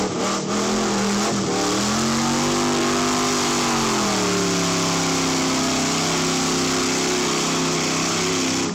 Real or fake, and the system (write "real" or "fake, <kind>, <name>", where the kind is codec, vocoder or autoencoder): real